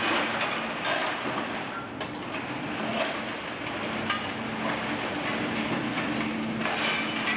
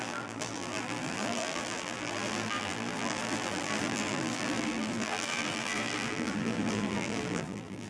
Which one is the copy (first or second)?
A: second